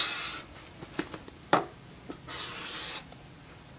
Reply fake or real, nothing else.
real